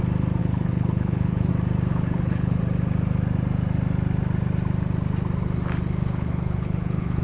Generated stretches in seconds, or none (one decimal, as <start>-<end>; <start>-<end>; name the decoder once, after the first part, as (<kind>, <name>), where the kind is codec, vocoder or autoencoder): 0.4-1.5 (codec, HILCodec); 1.9-2.6; 6.0-7.2